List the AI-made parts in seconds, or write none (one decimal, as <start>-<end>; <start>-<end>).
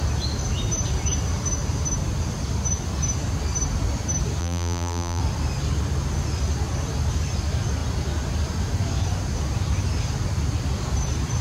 4.4-5.2